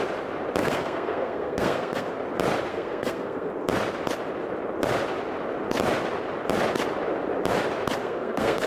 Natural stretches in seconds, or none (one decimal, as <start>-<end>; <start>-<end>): 0.0-0.6; 2.1-2.7; 3.5-8.0